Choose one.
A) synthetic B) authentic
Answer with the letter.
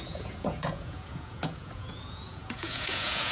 A